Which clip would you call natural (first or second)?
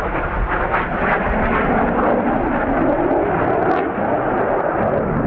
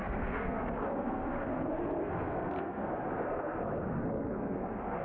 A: first